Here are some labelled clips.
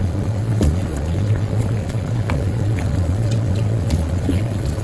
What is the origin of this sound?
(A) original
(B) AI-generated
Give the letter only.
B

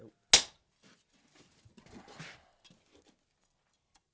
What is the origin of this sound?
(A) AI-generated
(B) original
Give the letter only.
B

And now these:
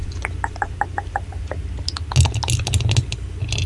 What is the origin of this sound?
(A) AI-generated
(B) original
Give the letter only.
B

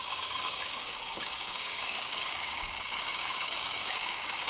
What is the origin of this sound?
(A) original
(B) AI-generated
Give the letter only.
B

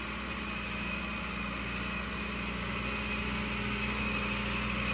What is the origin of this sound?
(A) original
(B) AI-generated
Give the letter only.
A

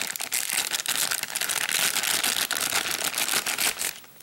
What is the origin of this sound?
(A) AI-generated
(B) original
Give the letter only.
B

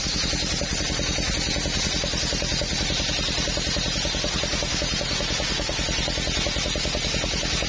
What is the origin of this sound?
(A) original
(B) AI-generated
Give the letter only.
A